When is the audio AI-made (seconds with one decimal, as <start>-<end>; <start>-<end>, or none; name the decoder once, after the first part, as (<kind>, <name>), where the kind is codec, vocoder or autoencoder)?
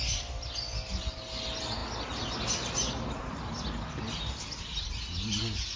none